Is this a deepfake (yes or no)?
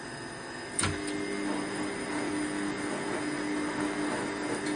no